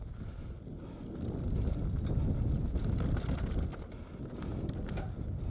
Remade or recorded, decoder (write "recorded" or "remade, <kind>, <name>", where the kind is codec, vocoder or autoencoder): recorded